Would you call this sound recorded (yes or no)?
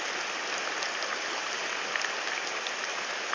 yes